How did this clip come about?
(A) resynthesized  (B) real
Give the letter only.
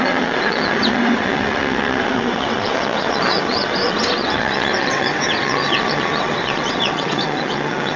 A